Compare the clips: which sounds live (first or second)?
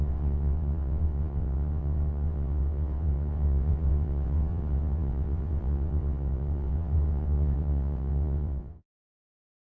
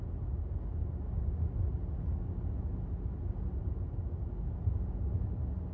second